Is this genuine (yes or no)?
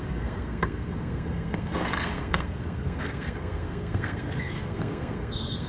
no